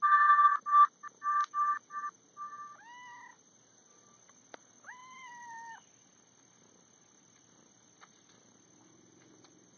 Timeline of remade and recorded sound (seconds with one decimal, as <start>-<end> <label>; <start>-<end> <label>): 0.0-9.8 recorded